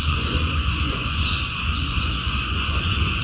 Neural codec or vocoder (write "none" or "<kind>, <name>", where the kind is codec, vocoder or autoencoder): vocoder, Vocos